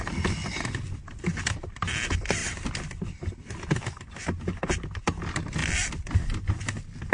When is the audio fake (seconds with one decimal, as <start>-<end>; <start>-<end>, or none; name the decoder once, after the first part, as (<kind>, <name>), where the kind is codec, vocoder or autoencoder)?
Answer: 2.4-3.2 (vocoder, BigVGAN v2); 5.6-6.6